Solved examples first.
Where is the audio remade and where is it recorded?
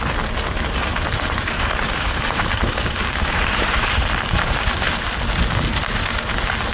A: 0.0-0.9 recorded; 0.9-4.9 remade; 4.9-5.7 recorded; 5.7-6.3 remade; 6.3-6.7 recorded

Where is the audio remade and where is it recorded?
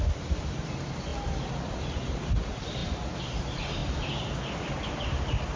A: 0.0-5.6 recorded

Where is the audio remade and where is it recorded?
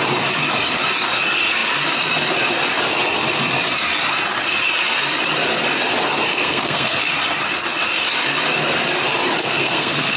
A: 0.0-6.3 recorded; 6.3-7.0 remade; 7.0-9.4 recorded; 9.4-10.2 remade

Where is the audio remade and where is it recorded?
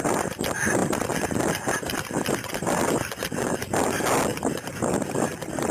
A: 0.0-5.7 recorded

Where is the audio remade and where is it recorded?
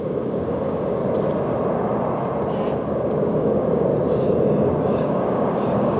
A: 0.0-1.0 remade; 1.0-2.7 recorded; 2.7-3.9 remade; 3.9-4.8 recorded; 4.8-6.0 remade